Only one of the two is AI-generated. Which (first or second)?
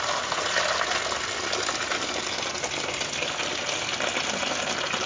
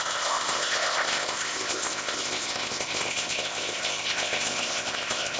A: second